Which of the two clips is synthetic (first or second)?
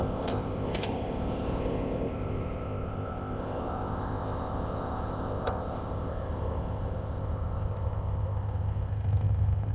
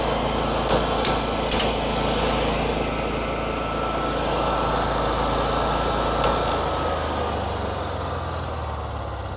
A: first